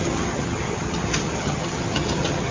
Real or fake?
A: fake